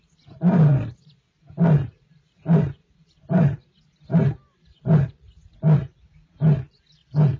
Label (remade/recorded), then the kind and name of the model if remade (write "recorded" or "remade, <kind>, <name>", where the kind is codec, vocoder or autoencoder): recorded